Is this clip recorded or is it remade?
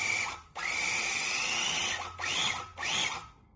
recorded